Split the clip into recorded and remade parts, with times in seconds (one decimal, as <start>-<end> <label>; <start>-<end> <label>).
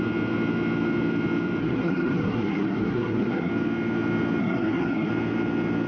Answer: 0.0-1.6 recorded; 1.6-3.5 remade; 3.5-4.4 recorded; 4.4-5.1 remade; 5.1-5.9 recorded